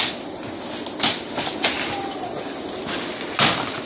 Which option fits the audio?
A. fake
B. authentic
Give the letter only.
B